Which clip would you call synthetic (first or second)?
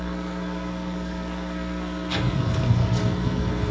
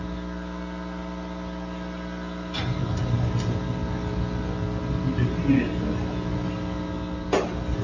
first